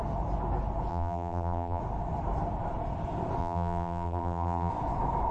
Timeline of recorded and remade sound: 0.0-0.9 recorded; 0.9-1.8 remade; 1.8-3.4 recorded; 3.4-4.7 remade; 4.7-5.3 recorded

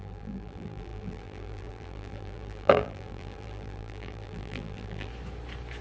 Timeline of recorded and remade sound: 0.0-5.1 remade; 5.1-5.8 recorded

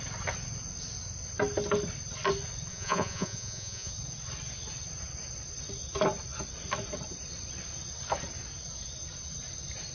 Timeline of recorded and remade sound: 0.0-2.7 recorded; 2.7-3.9 remade; 3.9-9.9 recorded

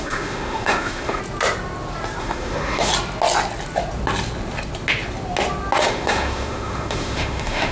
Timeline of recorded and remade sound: 0.0-1.2 remade; 1.2-2.2 recorded; 2.2-2.9 remade; 2.9-5.8 recorded; 5.8-7.7 remade

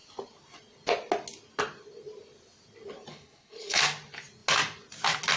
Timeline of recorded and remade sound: 0.0-3.1 recorded; 3.1-3.8 remade; 3.8-5.4 recorded